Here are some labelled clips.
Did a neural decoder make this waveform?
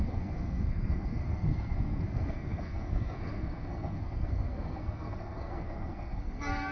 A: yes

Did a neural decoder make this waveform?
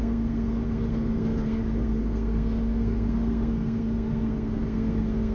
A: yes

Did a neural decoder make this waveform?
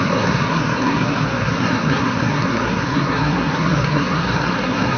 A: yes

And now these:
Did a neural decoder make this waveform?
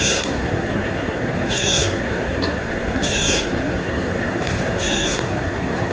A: yes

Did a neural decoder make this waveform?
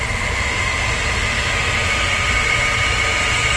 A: no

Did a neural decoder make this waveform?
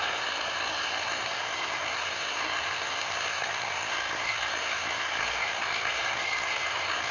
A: yes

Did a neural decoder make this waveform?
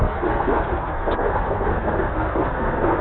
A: yes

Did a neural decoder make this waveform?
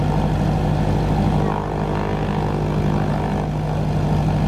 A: no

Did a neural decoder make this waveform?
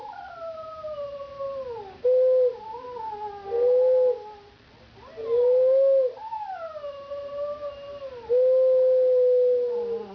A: no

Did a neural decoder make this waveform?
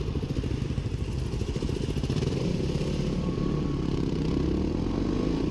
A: no